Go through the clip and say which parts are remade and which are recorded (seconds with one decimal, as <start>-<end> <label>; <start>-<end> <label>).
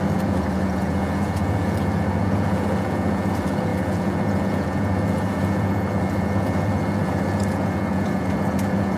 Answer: 0.0-9.0 remade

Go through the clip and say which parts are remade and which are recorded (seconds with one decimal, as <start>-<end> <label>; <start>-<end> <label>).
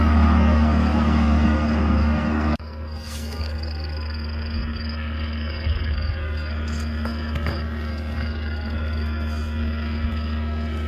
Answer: 0.0-10.9 remade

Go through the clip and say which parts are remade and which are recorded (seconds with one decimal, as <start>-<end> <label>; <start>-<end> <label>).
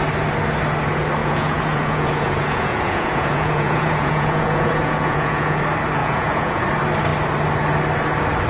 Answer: 0.0-1.2 recorded; 1.2-5.6 remade; 5.6-6.0 recorded; 6.0-6.6 remade; 6.6-8.5 recorded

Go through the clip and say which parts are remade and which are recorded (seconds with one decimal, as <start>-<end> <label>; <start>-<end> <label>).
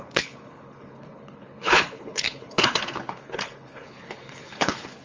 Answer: 0.0-5.0 remade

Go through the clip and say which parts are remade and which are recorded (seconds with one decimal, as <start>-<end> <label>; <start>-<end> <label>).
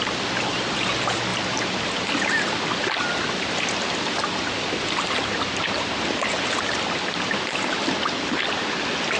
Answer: 0.0-9.2 recorded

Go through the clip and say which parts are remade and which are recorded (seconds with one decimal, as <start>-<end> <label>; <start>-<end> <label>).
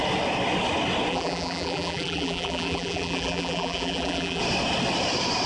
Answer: 0.0-1.1 recorded; 1.1-4.4 remade; 4.4-5.5 recorded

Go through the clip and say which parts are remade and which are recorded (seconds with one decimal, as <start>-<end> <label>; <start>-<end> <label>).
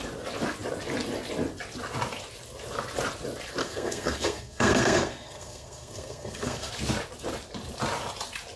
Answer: 0.0-3.6 recorded; 3.6-6.7 remade; 6.7-8.6 recorded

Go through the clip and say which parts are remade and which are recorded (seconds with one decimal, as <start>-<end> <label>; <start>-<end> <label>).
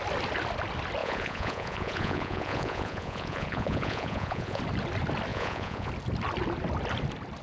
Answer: 0.0-1.0 recorded; 1.0-4.6 remade; 4.6-5.3 recorded; 5.3-5.9 remade; 5.9-7.4 recorded